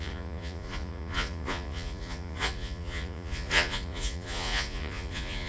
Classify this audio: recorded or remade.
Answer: remade